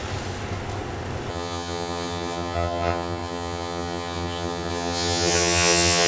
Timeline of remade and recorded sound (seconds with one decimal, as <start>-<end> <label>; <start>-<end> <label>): 0.0-1.3 recorded; 1.3-6.1 remade